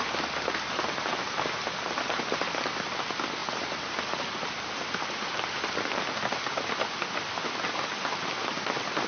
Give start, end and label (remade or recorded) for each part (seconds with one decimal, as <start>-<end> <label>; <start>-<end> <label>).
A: 0.0-9.1 recorded